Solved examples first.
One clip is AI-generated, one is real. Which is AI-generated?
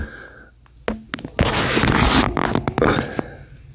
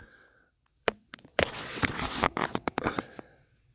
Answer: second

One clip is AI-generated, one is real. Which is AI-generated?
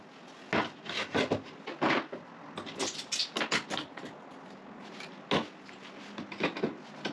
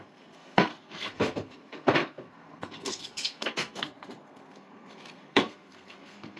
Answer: second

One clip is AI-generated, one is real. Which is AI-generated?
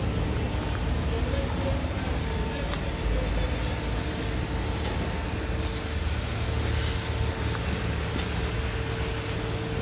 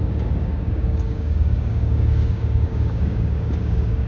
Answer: second